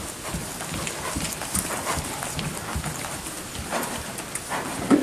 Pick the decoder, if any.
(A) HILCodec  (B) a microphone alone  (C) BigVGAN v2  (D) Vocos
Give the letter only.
B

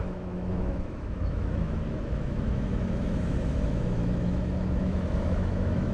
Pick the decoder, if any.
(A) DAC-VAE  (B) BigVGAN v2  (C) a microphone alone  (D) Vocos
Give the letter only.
A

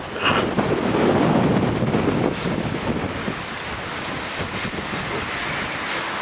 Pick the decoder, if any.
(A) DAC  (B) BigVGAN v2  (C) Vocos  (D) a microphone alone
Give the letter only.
D